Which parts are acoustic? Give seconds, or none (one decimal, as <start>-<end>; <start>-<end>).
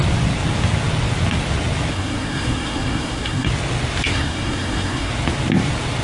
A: 0.0-1.9; 3.5-4.1; 5.1-6.0